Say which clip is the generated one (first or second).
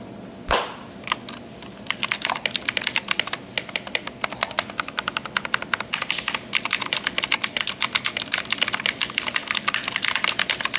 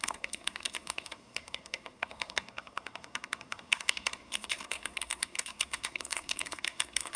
second